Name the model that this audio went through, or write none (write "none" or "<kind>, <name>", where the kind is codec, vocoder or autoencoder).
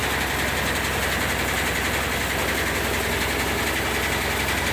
none